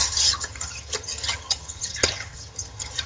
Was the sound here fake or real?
fake